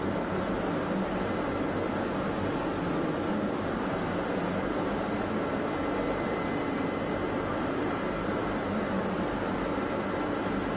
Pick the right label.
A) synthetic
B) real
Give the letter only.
B